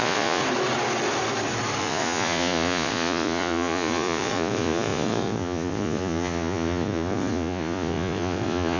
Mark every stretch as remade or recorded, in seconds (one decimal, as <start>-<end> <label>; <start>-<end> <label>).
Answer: 0.0-0.4 remade; 0.4-1.8 recorded; 1.8-8.8 remade